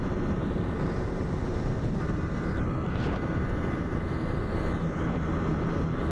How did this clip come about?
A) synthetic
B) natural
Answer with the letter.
A